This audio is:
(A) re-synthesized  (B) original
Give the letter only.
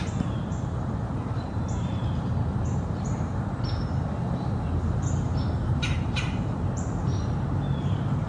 A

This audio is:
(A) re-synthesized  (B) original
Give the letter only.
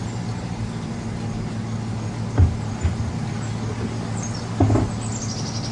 B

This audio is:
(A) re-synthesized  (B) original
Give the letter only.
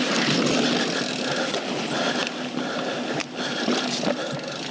B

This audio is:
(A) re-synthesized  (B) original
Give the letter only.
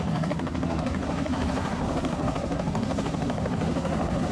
A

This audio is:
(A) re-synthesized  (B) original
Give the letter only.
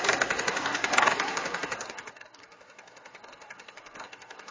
A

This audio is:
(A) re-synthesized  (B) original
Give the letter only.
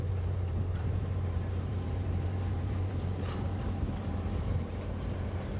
A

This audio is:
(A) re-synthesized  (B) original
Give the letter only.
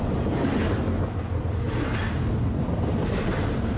B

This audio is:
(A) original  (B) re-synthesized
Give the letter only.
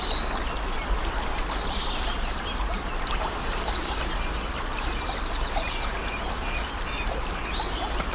A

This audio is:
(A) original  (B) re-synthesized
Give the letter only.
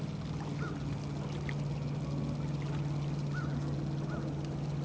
A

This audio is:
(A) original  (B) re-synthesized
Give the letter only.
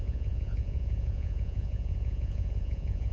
B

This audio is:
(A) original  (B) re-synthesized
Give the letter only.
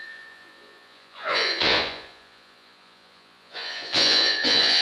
B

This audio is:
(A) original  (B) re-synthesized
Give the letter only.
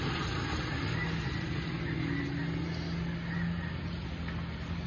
A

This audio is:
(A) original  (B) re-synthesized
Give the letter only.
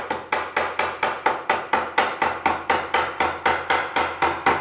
A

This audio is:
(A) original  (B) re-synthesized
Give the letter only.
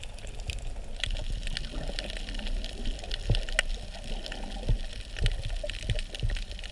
A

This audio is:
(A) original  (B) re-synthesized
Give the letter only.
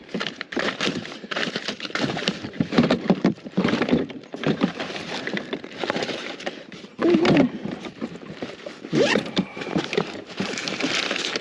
B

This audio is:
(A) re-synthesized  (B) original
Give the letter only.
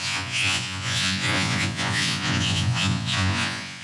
A